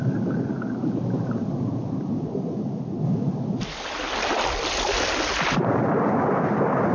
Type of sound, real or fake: real